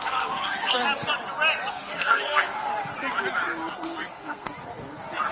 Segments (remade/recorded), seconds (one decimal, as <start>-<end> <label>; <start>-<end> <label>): 0.0-0.8 remade; 0.8-1.7 recorded; 1.7-2.7 remade; 2.7-4.1 recorded; 4.1-4.5 remade; 4.5-5.3 recorded